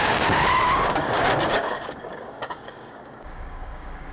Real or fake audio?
fake